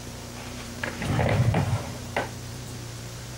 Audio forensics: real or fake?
fake